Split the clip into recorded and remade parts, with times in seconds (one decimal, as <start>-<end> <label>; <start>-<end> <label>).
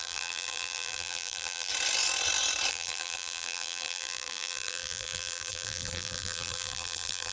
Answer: 0.0-1.7 remade; 1.7-2.7 recorded; 2.7-7.3 remade